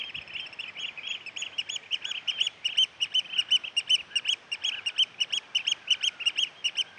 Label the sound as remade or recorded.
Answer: recorded